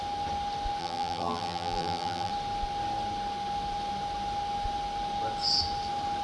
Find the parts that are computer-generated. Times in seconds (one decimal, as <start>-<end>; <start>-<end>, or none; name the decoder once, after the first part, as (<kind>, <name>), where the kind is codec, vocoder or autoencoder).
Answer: 0.8-2.3 (vocoder, BigVGAN v2)